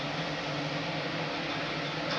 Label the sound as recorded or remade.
recorded